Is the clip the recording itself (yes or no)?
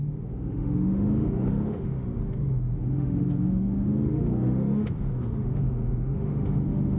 no